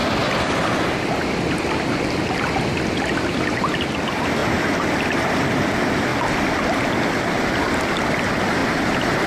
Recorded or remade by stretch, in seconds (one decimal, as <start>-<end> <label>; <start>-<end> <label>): 0.0-9.3 recorded